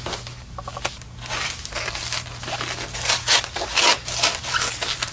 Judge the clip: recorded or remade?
recorded